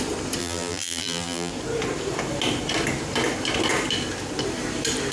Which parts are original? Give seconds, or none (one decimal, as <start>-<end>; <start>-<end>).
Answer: 0.0-0.4; 1.5-5.1